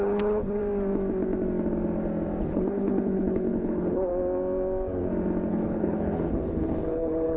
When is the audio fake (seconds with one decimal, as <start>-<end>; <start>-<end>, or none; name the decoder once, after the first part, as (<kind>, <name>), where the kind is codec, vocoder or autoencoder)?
0.0-0.6 (codec, HILCodec); 2.4-4.1; 5.5-7.4